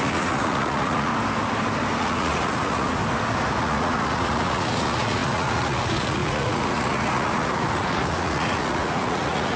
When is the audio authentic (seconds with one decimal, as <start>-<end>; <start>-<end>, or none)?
1.1-2.0; 3.0-3.6